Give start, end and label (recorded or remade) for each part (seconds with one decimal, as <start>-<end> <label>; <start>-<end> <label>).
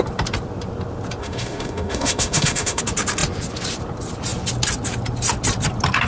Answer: 0.0-1.2 recorded; 1.2-2.8 remade; 2.8-6.1 recorded